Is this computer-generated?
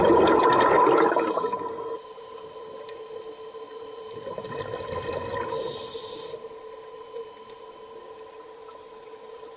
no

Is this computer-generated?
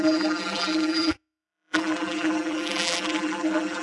yes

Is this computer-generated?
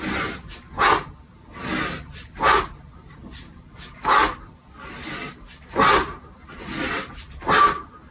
no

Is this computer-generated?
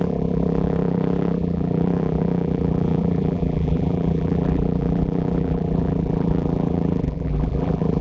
yes